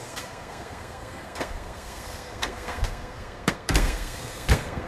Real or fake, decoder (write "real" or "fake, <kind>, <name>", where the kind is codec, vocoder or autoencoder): fake, codec, SNAC